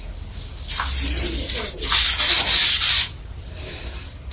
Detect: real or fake real